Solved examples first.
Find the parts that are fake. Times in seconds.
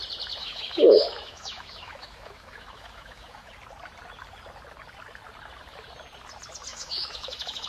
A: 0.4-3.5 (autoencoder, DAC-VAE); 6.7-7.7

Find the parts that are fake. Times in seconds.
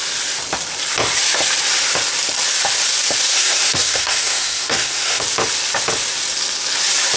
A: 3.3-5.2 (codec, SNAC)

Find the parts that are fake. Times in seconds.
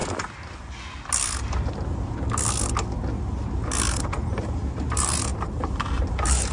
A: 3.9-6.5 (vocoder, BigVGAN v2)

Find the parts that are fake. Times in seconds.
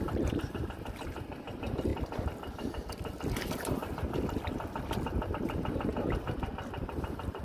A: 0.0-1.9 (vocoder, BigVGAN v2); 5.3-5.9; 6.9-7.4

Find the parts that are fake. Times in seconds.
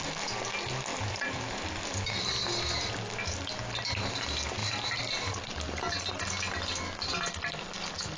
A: 0.9-2.3 (vocoder, BigVGAN v2); 4.6-5.4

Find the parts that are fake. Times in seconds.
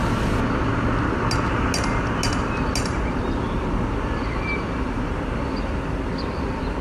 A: none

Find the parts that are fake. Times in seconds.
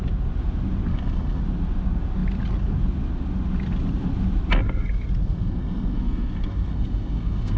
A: 0.9-1.4 (codec, SNAC); 5.2-7.6